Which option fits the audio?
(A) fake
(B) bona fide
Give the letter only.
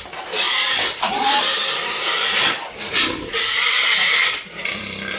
A